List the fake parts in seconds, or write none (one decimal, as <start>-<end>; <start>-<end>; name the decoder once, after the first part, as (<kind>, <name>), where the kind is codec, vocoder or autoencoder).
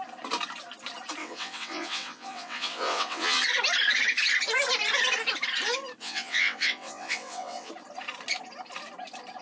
1.2-3.4 (vocoder, WaveNeXt); 6.0-7.7